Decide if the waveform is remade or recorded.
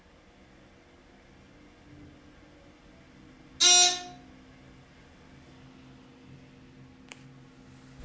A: recorded